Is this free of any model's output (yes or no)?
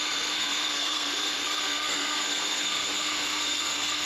no